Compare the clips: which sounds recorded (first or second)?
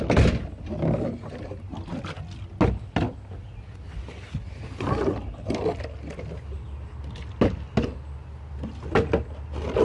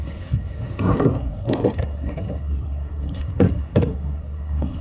first